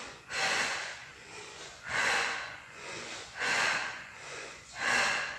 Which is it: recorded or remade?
remade